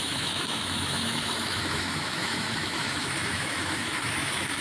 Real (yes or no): no